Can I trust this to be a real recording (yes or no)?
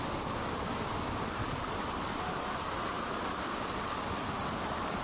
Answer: no